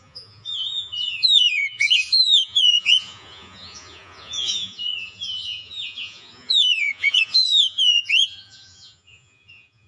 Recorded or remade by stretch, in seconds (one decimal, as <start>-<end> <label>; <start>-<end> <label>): 0.0-9.9 remade